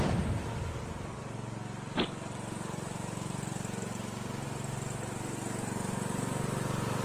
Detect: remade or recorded recorded